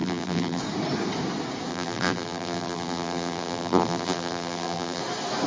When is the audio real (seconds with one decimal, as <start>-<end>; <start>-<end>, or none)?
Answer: 0.6-1.7; 5.0-5.5